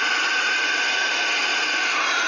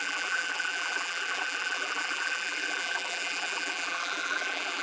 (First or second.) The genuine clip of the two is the first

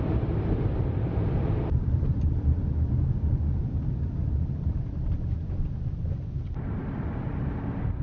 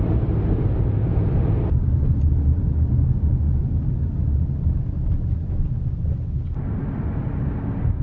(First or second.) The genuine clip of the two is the second